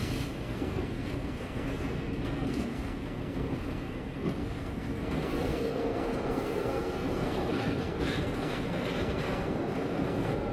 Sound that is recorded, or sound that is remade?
remade